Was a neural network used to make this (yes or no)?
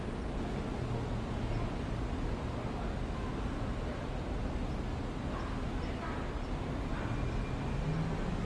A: no